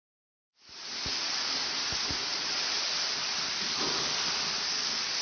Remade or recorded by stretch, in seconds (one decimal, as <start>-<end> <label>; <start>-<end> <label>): 0.0-5.2 recorded